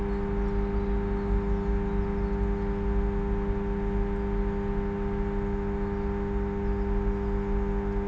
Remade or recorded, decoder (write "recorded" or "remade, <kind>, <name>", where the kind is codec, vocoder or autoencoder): recorded